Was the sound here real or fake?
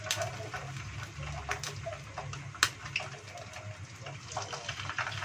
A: real